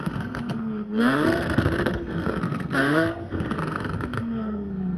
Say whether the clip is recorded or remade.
remade